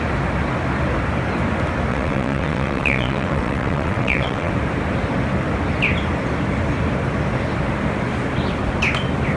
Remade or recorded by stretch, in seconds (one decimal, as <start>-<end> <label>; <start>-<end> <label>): 0.0-1.9 recorded; 1.9-4.5 remade; 4.5-9.4 recorded